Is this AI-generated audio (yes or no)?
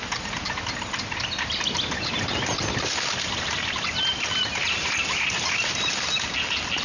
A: no